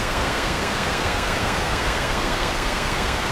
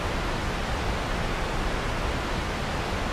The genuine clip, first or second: second